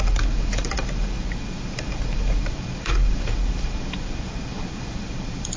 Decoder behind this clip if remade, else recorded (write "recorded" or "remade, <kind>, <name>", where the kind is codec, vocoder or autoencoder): remade, vocoder, BigVGAN v2